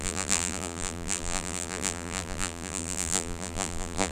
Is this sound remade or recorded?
remade